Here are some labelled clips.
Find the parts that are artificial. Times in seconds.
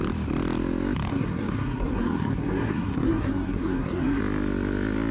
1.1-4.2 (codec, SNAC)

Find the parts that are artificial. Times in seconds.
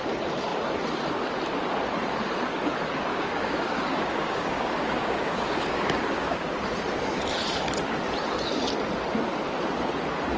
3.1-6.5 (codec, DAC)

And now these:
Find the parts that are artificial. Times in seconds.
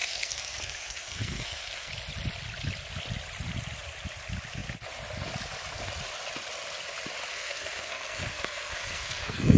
0.0-1.9 (codec, SNAC); 7.3-9.6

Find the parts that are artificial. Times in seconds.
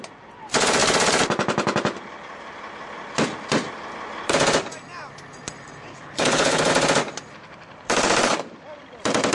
5.9-6.7 (codec, HILCodec)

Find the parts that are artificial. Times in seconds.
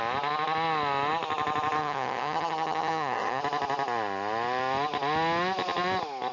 1.8-3.4 (vocoder, HiFi-GAN)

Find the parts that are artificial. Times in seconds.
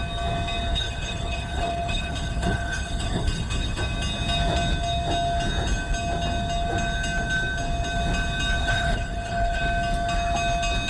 0.7-3.8 (codec, HILCodec); 8.6-9.6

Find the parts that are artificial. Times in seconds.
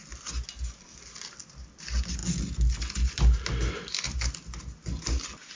none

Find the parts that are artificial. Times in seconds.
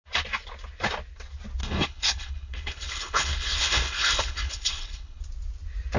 1.6-5.2 (codec, HILCodec)